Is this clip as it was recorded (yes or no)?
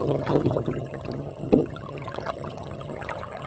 no